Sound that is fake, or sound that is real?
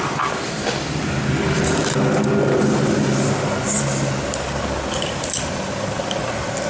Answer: real